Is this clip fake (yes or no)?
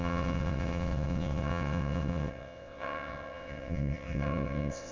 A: yes